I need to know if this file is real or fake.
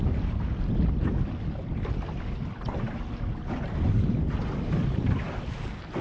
real